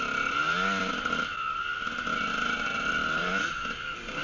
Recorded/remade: recorded